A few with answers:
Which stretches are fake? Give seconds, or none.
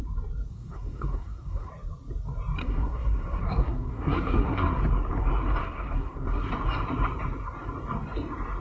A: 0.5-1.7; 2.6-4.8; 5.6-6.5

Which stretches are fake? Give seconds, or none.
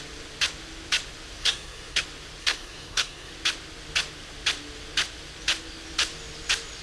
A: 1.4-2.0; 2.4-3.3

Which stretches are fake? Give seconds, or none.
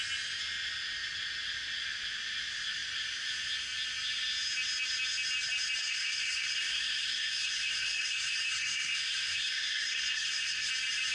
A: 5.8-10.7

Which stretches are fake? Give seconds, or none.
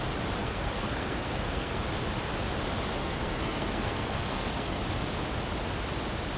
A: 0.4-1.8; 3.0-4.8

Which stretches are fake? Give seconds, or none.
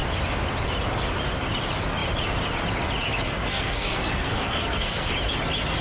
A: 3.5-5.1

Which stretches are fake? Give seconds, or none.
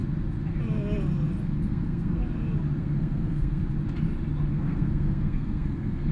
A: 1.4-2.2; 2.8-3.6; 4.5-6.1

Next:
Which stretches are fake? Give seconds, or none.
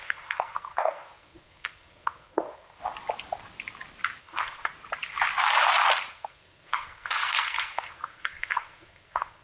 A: 0.0-2.8; 4.2-4.7; 6.1-9.4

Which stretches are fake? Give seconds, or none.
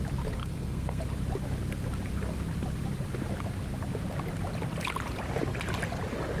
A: 0.4-1.0